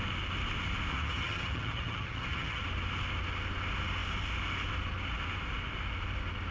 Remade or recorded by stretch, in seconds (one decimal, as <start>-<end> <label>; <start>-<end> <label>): 0.0-0.9 recorded; 0.9-2.6 remade; 2.6-6.5 recorded